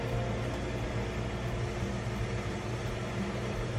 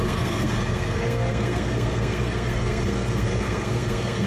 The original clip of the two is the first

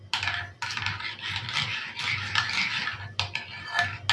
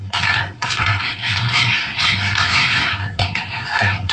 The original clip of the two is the first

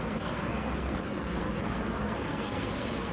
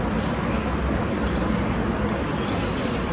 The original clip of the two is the second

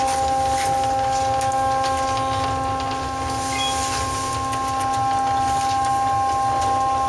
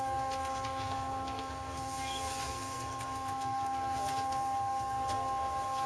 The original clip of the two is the first